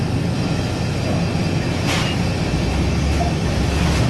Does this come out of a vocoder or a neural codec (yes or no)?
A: no